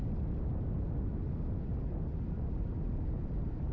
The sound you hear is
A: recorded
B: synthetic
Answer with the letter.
A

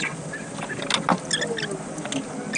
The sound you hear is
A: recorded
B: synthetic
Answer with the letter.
A